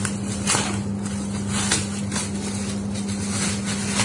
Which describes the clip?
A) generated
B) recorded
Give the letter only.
B